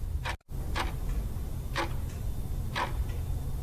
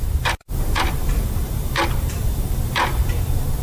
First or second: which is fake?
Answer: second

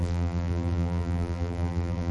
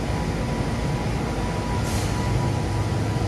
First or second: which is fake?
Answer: first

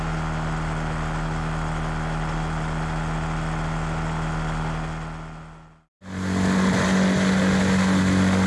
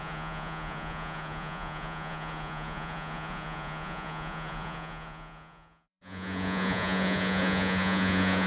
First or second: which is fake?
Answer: second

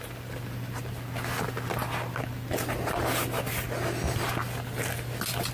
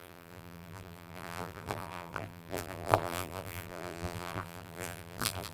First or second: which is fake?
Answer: second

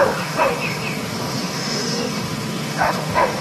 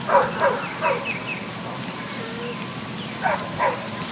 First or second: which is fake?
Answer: first